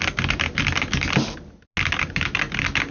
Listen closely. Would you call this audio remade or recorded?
recorded